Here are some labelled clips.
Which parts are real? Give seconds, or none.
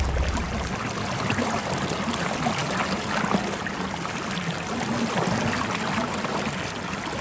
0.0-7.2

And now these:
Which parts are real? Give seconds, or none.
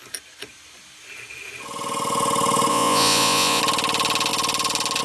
0.0-2.7; 3.6-5.0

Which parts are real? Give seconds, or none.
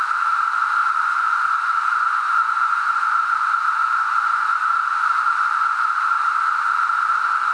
0.0-0.8; 5.3-7.5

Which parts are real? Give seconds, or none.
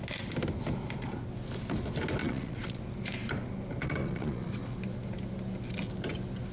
0.0-2.2; 2.8-3.8; 4.5-6.5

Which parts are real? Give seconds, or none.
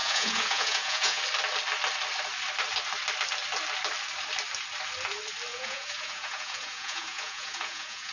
1.2-5.5